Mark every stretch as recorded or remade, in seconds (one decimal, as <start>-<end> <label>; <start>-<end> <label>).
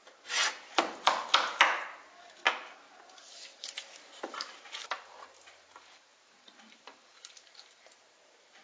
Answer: 0.0-4.0 recorded; 4.0-8.6 remade